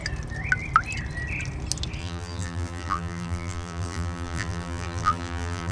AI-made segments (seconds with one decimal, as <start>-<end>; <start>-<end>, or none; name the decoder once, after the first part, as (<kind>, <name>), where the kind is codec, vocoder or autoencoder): 2.0-5.7 (vocoder, BigVGAN v2)